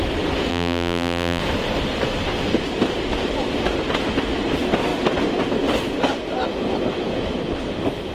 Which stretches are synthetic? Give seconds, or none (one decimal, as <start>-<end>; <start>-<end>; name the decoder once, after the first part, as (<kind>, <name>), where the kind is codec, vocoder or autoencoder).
0.5-1.4 (vocoder, BigVGAN v2)